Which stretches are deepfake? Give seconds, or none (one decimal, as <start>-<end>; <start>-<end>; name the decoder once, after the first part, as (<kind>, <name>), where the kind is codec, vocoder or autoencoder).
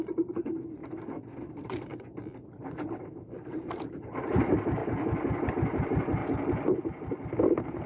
0.0-0.8 (vocoder, BigVGAN v2); 1.5-1.9; 2.6-4.8; 5.5-6.2